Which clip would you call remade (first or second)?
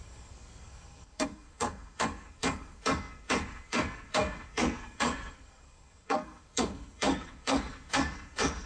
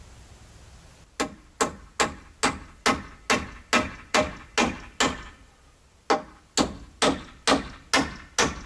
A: first